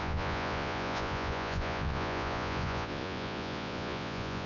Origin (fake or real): fake